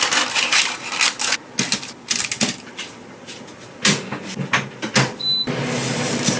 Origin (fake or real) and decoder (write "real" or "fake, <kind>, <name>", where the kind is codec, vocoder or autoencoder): real